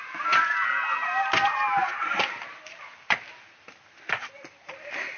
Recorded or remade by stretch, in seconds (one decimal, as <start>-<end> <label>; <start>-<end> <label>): 0.0-5.2 recorded